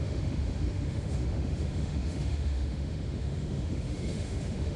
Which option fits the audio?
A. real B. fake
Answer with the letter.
B